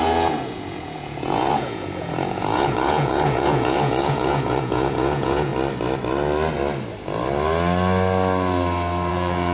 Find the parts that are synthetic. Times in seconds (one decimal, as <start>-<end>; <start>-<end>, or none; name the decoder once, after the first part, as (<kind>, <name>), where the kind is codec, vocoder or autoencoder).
0.0-5.5 (vocoder, Vocos); 9.1-9.5